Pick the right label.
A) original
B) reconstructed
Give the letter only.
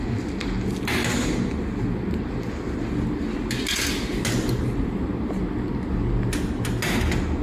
A